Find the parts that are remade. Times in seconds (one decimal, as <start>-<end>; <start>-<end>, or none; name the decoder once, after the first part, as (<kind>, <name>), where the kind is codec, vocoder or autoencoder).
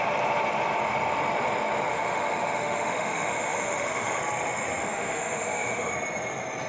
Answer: 1.9-4.2 (autoencoder, DAC-VAE); 4.8-5.9